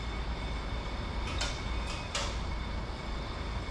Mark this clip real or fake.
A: real